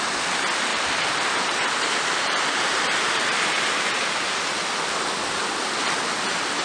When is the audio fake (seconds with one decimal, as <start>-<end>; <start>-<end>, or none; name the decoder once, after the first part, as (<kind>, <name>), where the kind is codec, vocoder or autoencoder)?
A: 0.7-4.4 (vocoder, BigVGAN v2)